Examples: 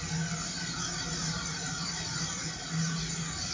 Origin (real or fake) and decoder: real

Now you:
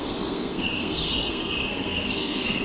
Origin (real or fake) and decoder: fake, codec, SNAC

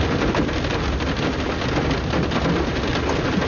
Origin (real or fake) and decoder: real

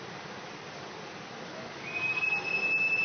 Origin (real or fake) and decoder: real